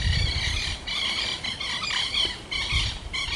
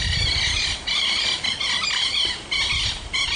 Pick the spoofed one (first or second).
first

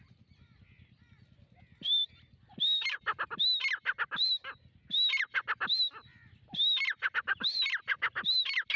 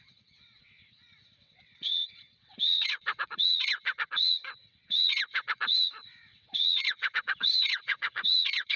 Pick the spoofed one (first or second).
second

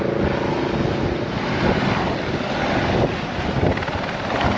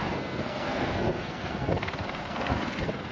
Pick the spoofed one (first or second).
second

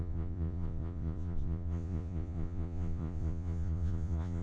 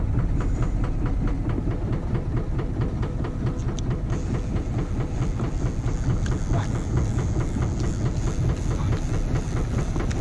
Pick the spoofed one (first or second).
first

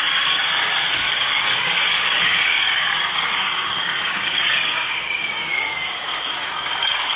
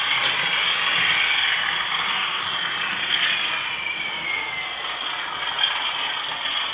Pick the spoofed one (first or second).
first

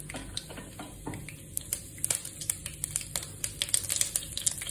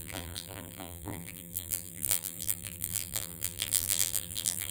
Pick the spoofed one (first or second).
second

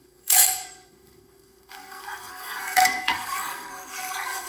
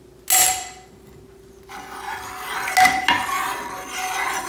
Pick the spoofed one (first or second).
first